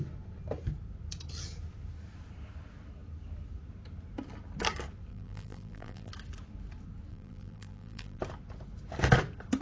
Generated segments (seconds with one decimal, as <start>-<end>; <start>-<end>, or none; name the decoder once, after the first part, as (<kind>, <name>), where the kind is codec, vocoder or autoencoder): 5.1-6.1 (vocoder, BigVGAN v2); 7.1-8.2